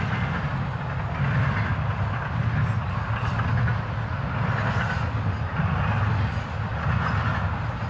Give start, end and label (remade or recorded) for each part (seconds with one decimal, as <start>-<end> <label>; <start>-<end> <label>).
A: 0.0-7.9 recorded